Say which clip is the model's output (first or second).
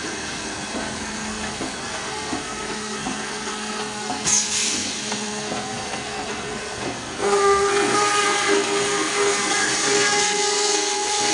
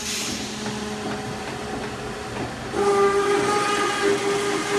first